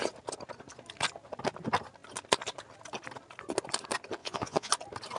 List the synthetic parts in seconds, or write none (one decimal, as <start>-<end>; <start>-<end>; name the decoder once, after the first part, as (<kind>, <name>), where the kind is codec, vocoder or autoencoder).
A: 4.2-4.7 (vocoder, Vocos)